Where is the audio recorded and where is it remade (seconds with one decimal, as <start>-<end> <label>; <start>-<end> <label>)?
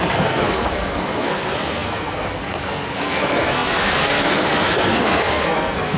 0.0-6.0 remade